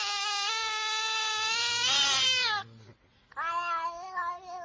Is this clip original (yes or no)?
yes